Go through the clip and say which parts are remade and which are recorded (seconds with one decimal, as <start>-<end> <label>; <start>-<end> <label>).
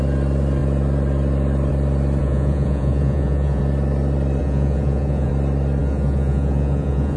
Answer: 0.0-2.2 recorded; 2.2-3.6 remade; 3.6-4.4 recorded; 4.4-5.3 remade; 5.3-5.8 recorded; 5.8-7.2 remade